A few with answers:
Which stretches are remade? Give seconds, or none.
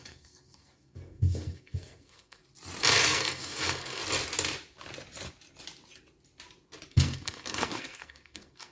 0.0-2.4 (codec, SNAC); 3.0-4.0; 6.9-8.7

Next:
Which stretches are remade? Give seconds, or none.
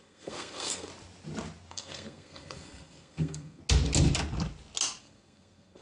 0.0-0.9 (codec, SNAC); 1.7-3.6; 5.0-5.8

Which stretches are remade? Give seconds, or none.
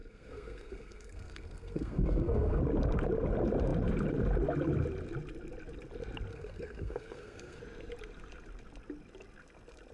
0.0-2.6 (codec, SNAC); 6.3-7.6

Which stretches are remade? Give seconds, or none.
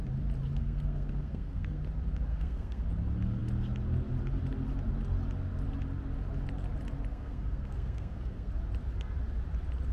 0.6-1.8 (codec, SNAC); 2.3-2.9; 7.1-8.5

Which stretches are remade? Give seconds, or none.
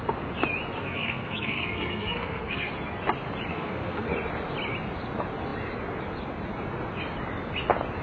0.8-2.7 (codec, SNAC); 3.5-4.1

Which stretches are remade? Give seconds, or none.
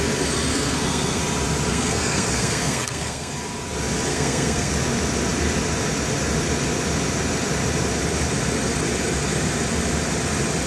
0.5-1.2 (codec, SNAC); 1.7-3.3; 4.1-4.7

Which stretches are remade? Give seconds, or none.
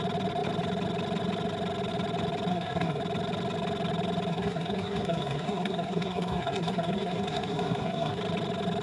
2.5-3.0 (codec, SNAC); 4.3-8.2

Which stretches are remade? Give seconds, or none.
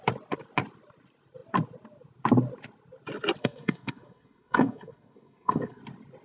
3.4-5.8 (codec, SNAC)